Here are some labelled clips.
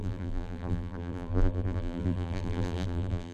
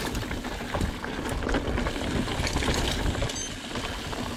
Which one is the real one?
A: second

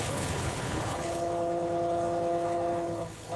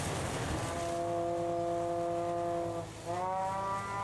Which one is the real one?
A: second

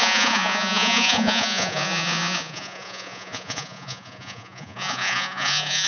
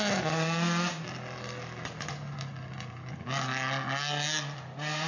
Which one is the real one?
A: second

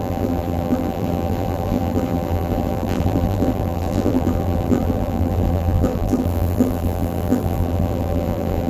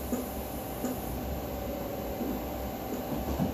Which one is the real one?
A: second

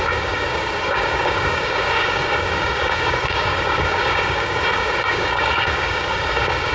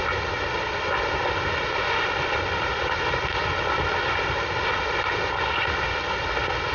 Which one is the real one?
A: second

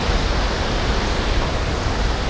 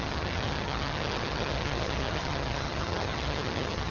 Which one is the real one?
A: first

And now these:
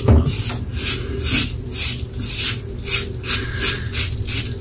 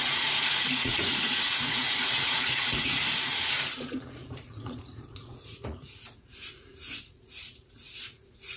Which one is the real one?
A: first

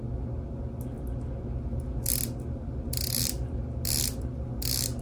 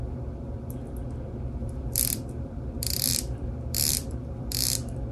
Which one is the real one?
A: first